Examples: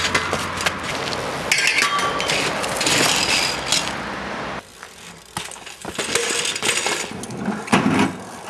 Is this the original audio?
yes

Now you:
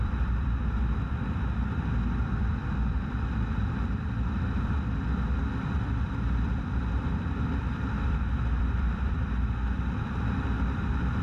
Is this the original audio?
no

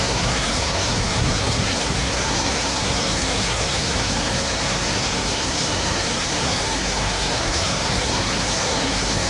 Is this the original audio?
no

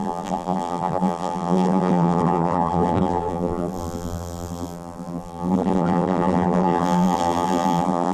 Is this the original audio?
no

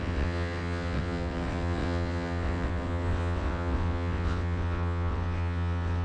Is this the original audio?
no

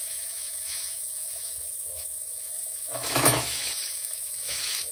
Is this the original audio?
no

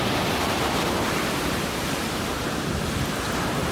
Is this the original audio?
no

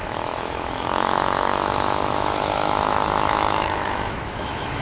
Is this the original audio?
no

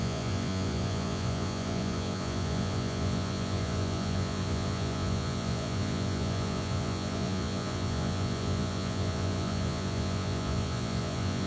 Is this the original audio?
no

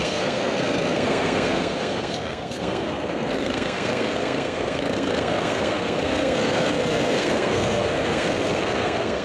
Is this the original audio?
no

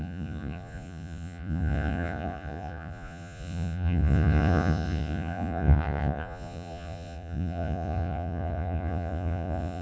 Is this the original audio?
no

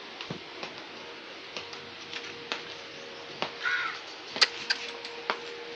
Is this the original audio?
yes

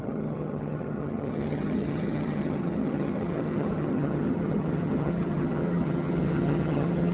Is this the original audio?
no